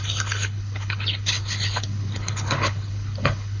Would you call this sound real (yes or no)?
no